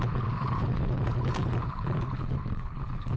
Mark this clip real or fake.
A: fake